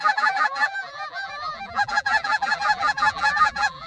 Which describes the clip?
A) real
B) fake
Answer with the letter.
B